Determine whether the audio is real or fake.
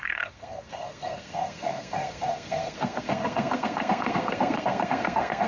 fake